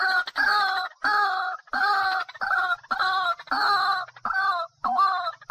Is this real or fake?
real